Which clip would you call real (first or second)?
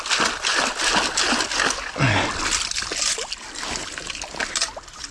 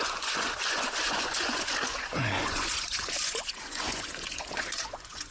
first